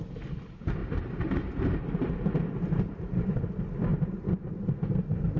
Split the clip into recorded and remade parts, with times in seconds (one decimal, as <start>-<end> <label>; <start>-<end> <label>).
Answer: 0.0-0.8 recorded; 0.8-3.4 remade; 3.4-3.9 recorded; 3.9-5.4 remade